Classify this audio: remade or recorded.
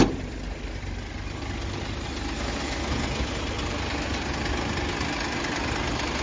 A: recorded